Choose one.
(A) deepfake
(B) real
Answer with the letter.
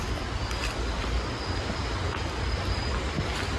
B